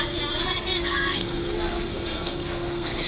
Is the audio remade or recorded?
remade